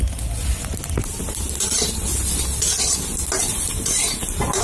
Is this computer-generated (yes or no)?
no